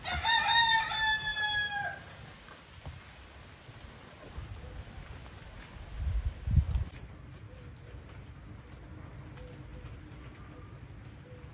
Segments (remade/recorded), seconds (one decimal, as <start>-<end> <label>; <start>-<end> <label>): 0.0-1.3 recorded; 1.3-2.2 remade; 2.2-9.7 recorded; 9.7-10.4 remade; 10.4-11.5 recorded